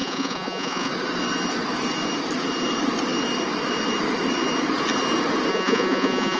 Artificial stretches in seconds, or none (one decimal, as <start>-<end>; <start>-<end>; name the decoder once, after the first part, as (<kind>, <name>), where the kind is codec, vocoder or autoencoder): 0.0-0.9 (vocoder, Vocos); 5.5-6.4